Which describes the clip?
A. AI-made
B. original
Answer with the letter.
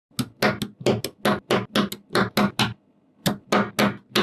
B